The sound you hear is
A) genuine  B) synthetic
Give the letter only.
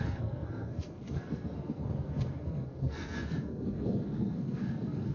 B